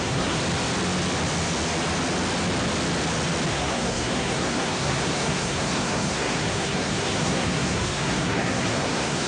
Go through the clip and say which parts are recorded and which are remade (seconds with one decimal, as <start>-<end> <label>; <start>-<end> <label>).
0.0-0.4 remade; 0.4-3.5 recorded; 3.5-9.3 remade